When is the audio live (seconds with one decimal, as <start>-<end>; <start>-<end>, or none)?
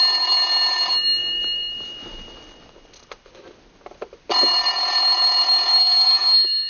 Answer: 0.0-5.8